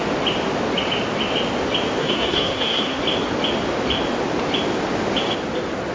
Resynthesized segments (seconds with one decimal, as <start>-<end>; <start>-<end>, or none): 2.0-3.0